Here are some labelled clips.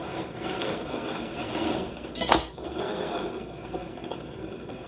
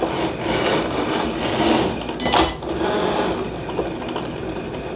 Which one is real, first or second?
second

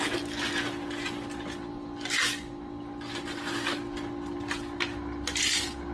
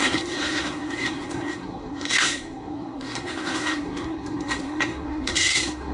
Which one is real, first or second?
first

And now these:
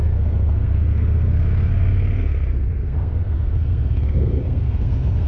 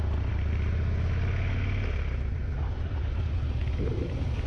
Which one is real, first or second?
second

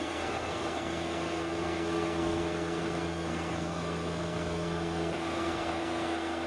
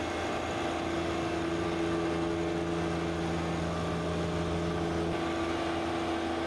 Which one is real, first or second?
second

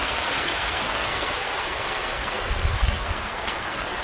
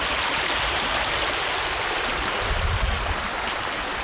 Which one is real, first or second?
second